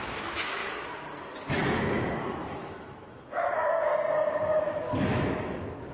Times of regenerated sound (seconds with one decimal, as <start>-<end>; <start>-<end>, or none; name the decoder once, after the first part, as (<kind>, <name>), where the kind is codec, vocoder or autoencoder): 0.0-0.6 (autoencoder, DAC-VAE); 1.5-3.9; 4.6-5.9